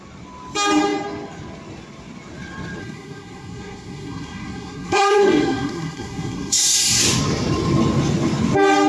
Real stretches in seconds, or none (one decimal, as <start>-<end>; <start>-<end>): 0.0-2.8; 7.0-8.9